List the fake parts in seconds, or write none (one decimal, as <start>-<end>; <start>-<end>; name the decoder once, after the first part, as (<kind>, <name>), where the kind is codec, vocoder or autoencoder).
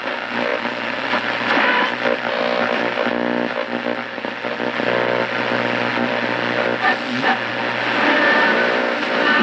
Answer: 0.5-2.4 (vocoder, BigVGAN v2)